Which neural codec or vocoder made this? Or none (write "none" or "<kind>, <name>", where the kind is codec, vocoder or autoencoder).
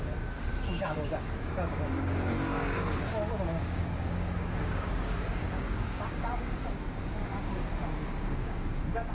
codec, DAC